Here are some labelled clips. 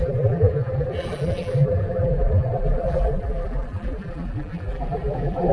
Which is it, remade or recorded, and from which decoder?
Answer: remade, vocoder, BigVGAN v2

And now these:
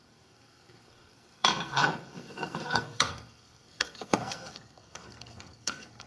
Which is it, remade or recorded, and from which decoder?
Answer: remade, codec, SNAC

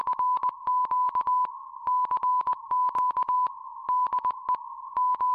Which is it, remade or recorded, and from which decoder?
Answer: remade, autoencoder, DAC-VAE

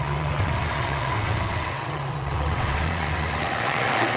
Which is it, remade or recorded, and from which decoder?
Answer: remade, vocoder, WaveNeXt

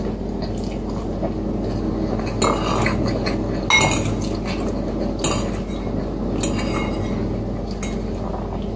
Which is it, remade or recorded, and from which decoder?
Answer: recorded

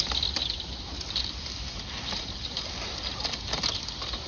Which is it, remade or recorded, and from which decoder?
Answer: recorded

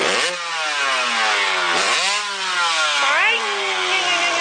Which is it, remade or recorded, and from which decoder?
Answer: recorded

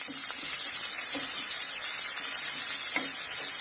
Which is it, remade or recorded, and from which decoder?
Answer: recorded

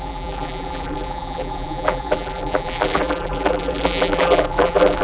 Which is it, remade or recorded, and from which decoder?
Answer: remade, vocoder, BigVGAN v2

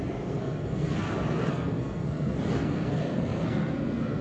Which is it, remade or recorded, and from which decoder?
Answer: remade, codec, SNAC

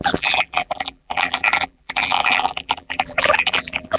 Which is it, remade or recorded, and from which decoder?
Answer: remade, vocoder, BigVGAN v2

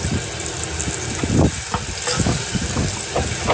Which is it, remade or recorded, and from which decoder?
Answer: recorded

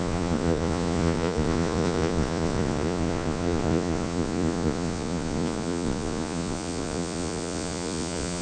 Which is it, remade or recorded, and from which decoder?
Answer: remade, vocoder, Vocos